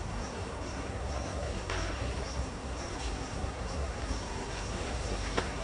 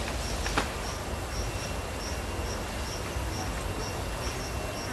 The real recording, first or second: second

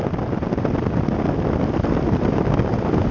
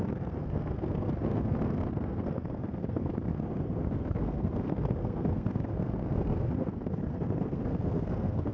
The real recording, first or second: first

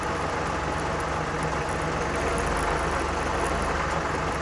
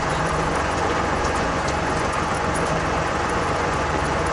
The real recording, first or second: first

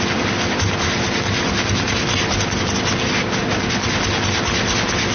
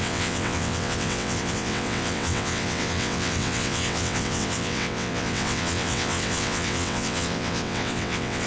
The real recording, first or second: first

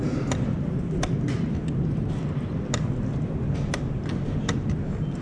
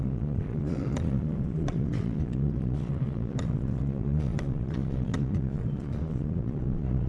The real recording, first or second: first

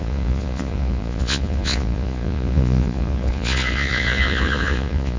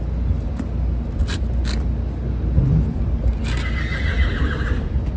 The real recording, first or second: second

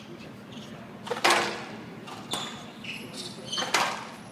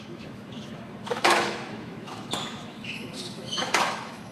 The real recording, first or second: first